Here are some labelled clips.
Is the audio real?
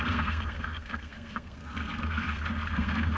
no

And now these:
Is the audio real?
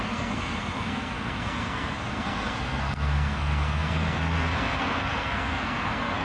no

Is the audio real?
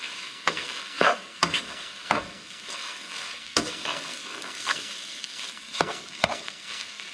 no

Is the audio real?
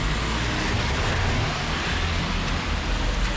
yes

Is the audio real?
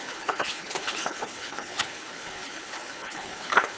no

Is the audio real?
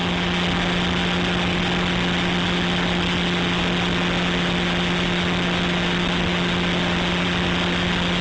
yes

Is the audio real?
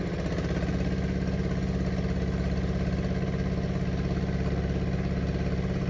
yes